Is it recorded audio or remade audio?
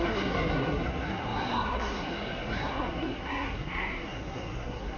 remade